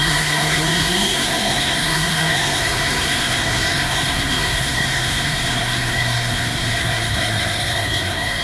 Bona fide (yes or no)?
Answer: no